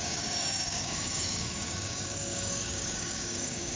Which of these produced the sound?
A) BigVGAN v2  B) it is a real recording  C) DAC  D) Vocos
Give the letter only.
C